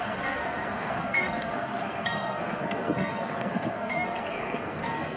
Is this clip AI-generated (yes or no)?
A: yes